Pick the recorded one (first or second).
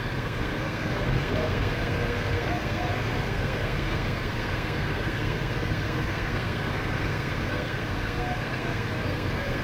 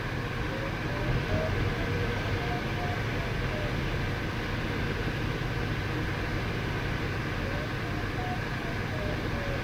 second